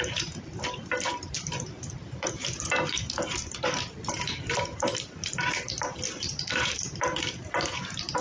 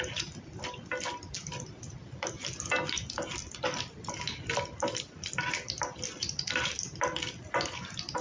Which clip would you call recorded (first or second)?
second